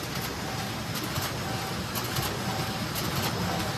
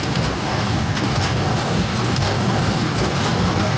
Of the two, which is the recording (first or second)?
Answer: first